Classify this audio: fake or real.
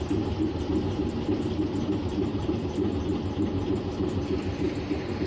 real